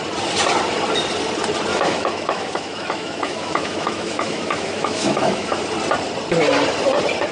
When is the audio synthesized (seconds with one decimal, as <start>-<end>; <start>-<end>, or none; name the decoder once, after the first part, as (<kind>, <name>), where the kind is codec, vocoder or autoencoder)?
1.7-5.6 (autoencoder, DAC-VAE)